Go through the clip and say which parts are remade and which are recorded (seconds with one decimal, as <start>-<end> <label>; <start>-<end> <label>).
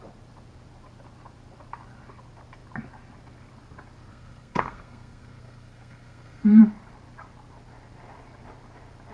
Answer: 0.0-4.1 recorded; 4.1-6.6 remade; 6.6-9.1 recorded